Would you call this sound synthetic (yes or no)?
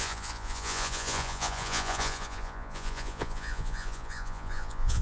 yes